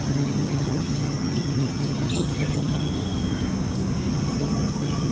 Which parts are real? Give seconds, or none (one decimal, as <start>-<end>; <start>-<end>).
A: 2.9-4.1